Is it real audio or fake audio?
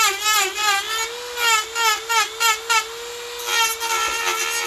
real